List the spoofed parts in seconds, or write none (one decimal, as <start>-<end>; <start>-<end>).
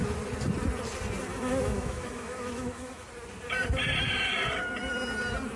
1.3-3.1